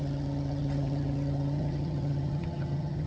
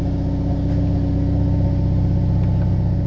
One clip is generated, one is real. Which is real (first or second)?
second